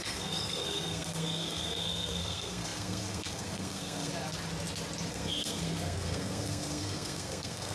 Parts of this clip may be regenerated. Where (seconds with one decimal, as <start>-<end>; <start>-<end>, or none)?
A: 0.0-4.1; 5.1-7.7